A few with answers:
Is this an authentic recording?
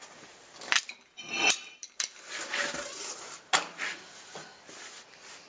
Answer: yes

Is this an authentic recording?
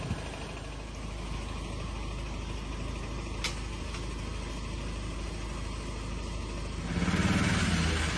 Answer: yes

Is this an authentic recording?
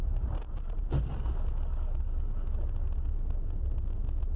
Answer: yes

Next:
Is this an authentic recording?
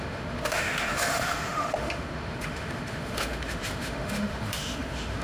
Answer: no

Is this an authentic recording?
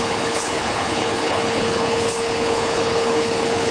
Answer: no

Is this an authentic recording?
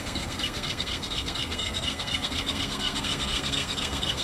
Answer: no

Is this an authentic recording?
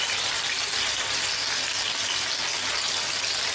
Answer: yes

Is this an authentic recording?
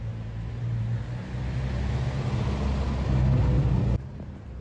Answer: yes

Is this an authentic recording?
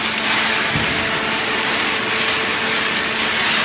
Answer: yes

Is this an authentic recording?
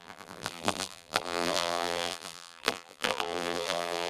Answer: no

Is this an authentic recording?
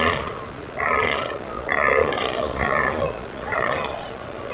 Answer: no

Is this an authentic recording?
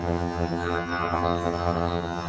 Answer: no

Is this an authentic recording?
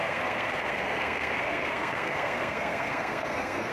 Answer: no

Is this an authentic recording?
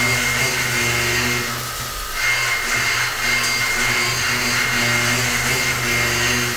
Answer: yes